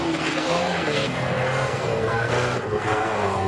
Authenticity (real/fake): fake